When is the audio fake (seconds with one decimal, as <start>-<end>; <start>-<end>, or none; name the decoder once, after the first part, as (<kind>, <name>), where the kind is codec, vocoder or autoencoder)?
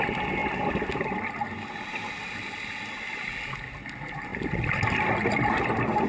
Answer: none